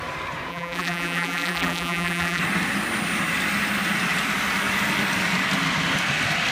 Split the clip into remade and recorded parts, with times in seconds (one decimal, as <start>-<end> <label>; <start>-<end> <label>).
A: 0.0-0.5 recorded; 0.5-2.4 remade; 2.4-6.5 recorded